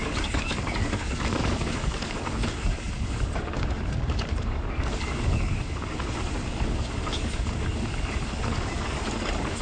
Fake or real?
fake